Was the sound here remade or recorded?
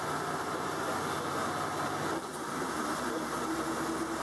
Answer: recorded